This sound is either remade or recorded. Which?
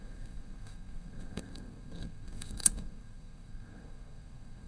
remade